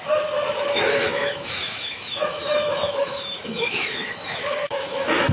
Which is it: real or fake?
fake